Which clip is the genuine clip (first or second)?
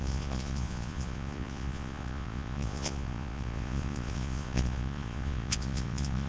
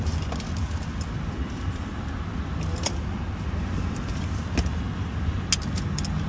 second